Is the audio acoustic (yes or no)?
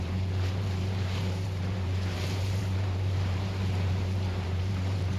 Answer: no